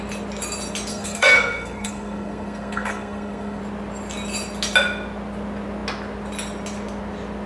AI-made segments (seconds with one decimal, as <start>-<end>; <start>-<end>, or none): 0.9-3.6